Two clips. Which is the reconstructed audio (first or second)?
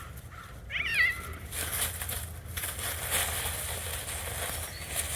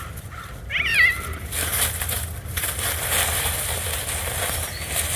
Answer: second